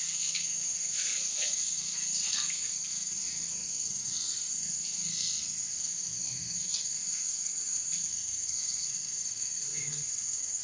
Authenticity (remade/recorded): remade